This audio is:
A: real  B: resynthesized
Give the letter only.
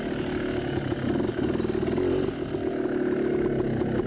A